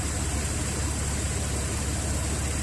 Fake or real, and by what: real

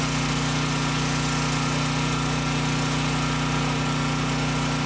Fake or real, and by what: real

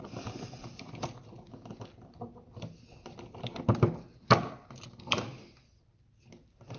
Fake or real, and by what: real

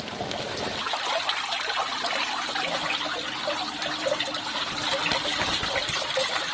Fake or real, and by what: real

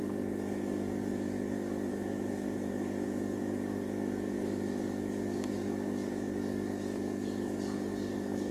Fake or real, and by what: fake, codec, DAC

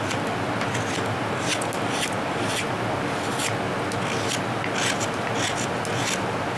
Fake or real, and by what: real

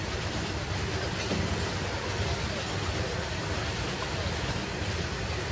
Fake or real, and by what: real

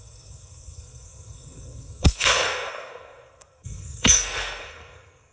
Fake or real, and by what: fake, codec, SNAC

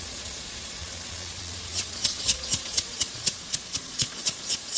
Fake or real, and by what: fake, vocoder, Vocos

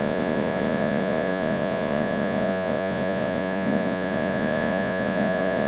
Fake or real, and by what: fake, vocoder, Vocos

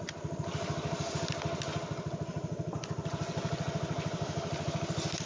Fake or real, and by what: real